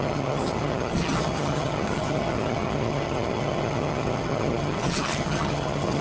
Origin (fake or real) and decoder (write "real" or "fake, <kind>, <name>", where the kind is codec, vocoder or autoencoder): fake, vocoder, HiFi-GAN